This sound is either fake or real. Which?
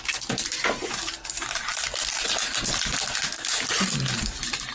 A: real